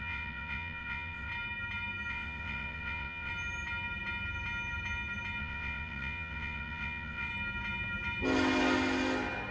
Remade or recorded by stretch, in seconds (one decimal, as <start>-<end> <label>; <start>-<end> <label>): 0.0-1.3 remade; 1.3-2.1 recorded; 2.1-3.3 remade; 3.3-5.4 recorded; 5.4-7.3 remade; 7.3-9.5 recorded